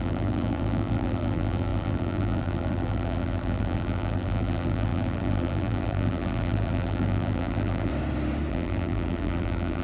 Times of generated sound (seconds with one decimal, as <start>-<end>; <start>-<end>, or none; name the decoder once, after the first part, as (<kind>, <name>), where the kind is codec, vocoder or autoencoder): 0.0-7.9 (vocoder, BigVGAN v2); 8.5-9.8